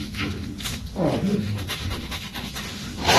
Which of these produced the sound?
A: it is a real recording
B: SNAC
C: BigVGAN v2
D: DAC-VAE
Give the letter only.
D